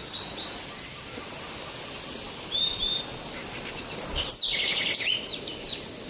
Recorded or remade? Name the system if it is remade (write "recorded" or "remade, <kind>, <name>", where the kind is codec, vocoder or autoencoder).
recorded